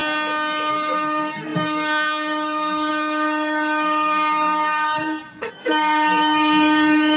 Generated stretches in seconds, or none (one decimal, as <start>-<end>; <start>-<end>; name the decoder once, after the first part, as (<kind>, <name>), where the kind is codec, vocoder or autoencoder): 0.7-7.2 (codec, SNAC)